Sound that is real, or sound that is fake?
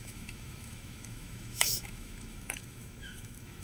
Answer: fake